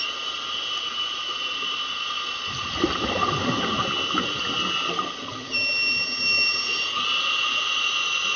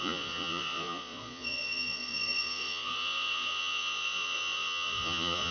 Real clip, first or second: first